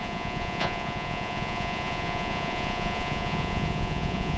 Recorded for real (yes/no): no